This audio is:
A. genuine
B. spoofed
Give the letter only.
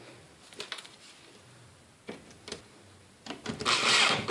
A